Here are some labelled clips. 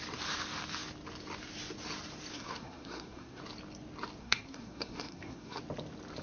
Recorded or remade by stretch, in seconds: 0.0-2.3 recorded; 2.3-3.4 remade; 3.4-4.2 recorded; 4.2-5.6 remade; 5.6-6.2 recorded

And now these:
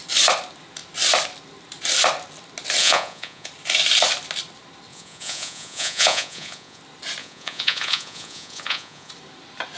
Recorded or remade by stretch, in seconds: 0.0-2.8 recorded; 2.8-3.5 remade; 3.5-4.9 recorded; 4.9-6.8 remade; 6.8-7.2 recorded; 7.2-9.1 remade; 9.1-9.8 recorded

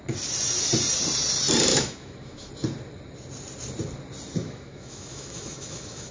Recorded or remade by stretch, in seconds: 0.0-1.7 recorded; 1.7-2.5 remade; 2.5-4.4 recorded; 4.4-6.1 remade